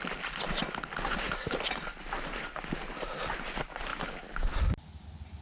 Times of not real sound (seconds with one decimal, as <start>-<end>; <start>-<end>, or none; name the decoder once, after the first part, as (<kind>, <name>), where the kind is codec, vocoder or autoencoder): none